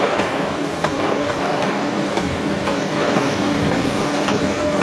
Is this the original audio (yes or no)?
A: no